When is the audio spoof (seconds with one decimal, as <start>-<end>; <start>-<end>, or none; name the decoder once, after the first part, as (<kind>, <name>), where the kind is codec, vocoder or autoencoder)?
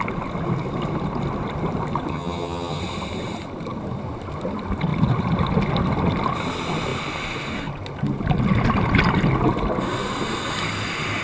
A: 2.1-2.8 (vocoder, HiFi-GAN)